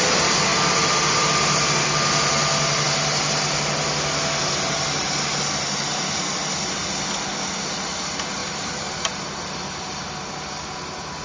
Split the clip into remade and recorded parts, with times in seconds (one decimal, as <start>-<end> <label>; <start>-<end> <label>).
0.0-8.4 recorded; 8.4-10.0 remade; 10.0-11.2 recorded